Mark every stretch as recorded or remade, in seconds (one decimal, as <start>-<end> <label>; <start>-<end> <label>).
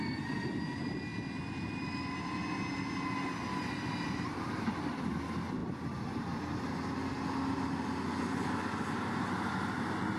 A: 0.0-10.2 recorded